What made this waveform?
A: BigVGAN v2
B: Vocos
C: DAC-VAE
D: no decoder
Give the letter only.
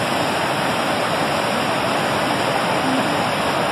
D